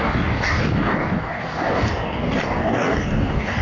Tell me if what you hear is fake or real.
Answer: fake